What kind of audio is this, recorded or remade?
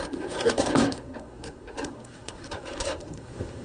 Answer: remade